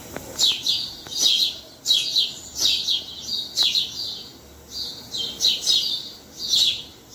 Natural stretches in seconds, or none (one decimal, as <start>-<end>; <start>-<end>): 0.0-7.1